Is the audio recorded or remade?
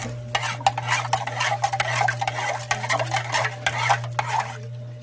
recorded